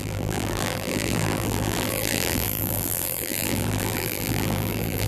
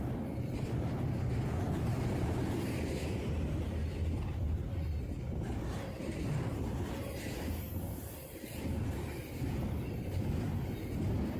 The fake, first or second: first